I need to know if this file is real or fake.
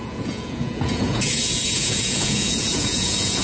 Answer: fake